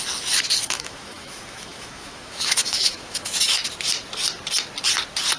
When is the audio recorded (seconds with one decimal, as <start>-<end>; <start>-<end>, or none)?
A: 0.0-0.6; 3.6-5.4